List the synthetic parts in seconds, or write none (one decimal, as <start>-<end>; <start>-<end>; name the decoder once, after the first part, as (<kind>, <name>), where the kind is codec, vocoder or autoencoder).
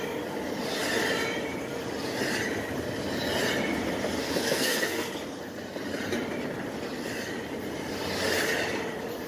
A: 4.2-5.1 (codec, SNAC)